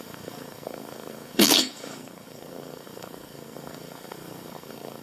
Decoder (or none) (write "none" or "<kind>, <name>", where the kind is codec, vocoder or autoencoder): codec, SNAC